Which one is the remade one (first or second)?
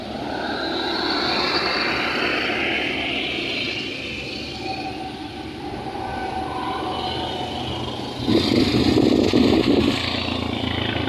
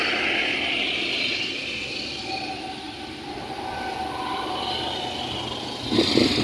second